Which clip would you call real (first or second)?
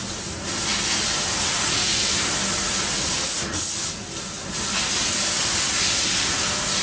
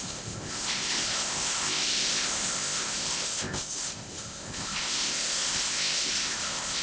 first